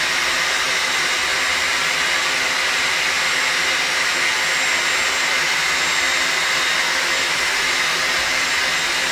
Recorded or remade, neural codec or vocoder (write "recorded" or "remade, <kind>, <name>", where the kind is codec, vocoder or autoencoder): recorded